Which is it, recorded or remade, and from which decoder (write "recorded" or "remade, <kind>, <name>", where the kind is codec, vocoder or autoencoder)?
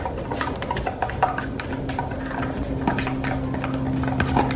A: recorded